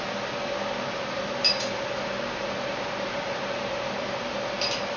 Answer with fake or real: real